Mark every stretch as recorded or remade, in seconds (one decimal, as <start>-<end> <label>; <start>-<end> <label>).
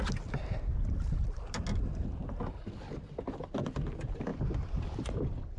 0.0-5.6 recorded